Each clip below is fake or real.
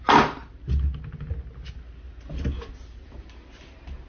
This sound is real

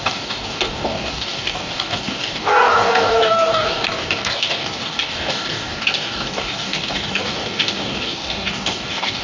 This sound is fake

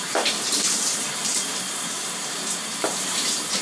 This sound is fake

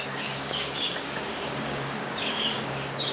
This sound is fake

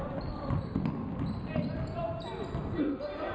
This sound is real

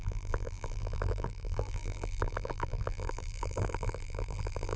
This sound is fake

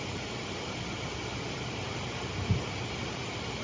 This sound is real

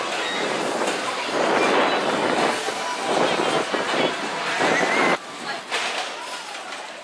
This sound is real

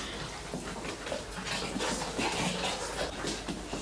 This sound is real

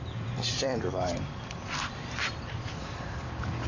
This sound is fake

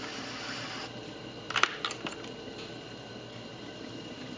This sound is real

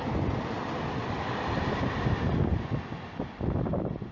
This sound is real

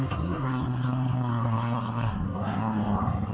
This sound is fake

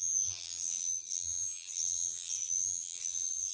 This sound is fake